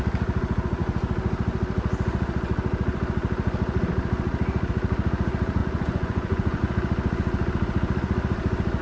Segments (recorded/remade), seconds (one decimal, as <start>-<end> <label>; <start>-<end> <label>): 0.0-5.6 recorded; 5.6-6.6 remade; 6.6-8.8 recorded